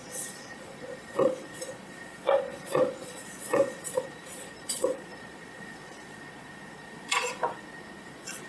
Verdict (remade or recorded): remade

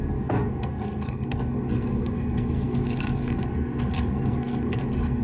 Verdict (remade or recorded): remade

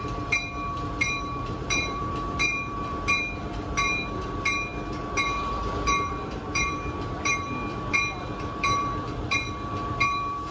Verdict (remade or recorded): remade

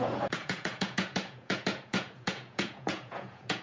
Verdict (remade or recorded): remade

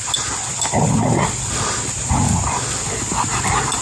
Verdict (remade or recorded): recorded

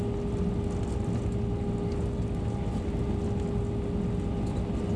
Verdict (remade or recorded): recorded